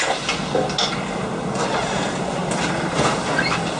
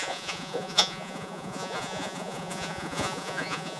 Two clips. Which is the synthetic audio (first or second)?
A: second